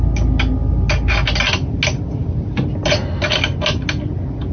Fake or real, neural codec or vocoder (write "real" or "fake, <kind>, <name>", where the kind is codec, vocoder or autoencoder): real